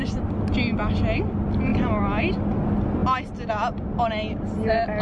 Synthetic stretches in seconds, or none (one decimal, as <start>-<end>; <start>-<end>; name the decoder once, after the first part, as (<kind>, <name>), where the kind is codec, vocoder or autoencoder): none